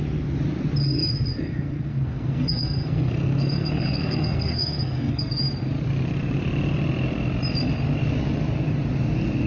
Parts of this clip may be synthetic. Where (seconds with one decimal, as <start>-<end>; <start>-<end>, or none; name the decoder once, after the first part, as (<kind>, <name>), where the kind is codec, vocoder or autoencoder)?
1.4-5.4 (codec, SNAC)